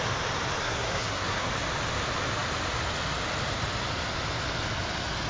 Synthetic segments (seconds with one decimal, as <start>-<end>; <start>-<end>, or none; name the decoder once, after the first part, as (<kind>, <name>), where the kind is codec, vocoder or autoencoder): 0.6-1.5 (codec, SNAC)